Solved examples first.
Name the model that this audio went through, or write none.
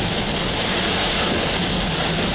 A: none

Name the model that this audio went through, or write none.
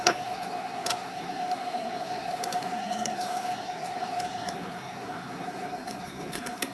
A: codec, SNAC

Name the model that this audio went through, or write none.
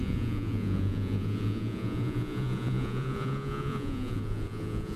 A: vocoder, Vocos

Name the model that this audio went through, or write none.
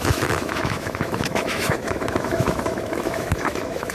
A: autoencoder, DAC-VAE